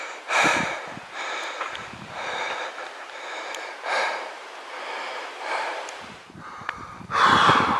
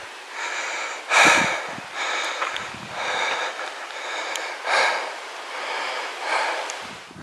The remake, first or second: first